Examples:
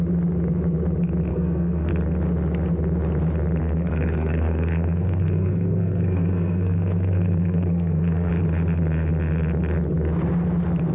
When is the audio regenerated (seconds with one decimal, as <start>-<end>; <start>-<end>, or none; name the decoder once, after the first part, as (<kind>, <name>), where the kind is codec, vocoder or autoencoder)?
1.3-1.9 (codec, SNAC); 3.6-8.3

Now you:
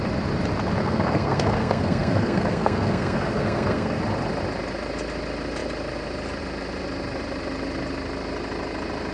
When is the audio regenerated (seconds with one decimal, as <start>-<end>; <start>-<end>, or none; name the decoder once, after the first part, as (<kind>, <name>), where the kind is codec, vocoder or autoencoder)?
0.8-4.0 (codec, SNAC)

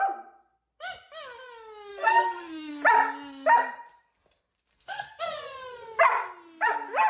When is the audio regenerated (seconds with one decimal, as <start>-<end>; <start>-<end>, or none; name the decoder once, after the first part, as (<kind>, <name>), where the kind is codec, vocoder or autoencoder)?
1.9-2.7 (codec, SNAC); 4.7-5.2